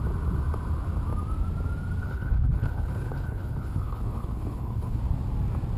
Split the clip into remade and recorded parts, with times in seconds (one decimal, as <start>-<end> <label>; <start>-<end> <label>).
0.0-2.0 recorded; 2.0-5.0 remade; 5.0-5.8 recorded

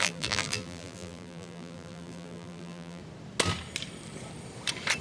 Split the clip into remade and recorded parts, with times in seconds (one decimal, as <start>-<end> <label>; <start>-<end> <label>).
0.0-3.0 remade; 3.0-5.0 recorded

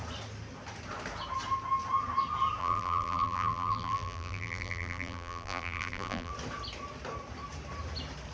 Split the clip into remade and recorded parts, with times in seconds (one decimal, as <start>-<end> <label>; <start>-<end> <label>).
0.0-2.6 recorded; 2.6-6.3 remade; 6.3-8.3 recorded

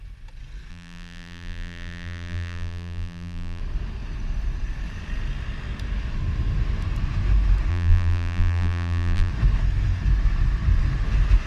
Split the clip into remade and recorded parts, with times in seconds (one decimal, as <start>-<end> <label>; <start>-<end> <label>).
0.0-0.7 recorded; 0.7-3.6 remade; 3.6-7.7 recorded; 7.7-9.3 remade; 9.3-11.5 recorded

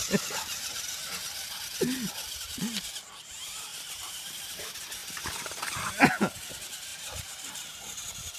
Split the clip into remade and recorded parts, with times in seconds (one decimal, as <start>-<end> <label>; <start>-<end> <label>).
0.0-1.5 remade; 1.5-3.7 recorded; 3.7-4.3 remade; 4.3-5.0 recorded; 5.0-5.9 remade; 5.9-6.9 recorded; 6.9-7.8 remade; 7.8-8.4 recorded

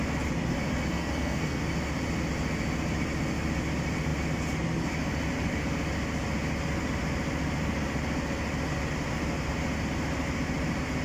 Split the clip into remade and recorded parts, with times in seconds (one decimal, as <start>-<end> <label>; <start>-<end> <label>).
0.0-0.9 recorded; 0.9-1.6 remade; 1.6-11.0 recorded

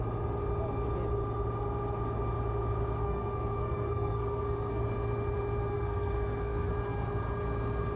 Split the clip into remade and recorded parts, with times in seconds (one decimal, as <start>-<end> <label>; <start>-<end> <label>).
0.0-3.0 recorded; 3.0-4.8 remade; 4.8-5.7 recorded; 5.7-6.7 remade; 6.7-8.0 recorded

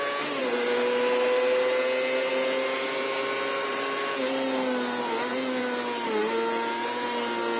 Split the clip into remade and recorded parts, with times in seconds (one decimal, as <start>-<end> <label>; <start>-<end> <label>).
0.0-7.6 recorded